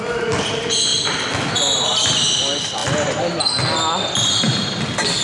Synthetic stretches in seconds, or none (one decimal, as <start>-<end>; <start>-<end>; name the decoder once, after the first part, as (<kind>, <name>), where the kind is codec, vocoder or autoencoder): none